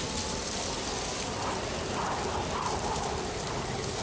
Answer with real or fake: real